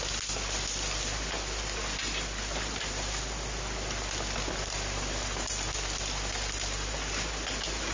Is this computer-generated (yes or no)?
no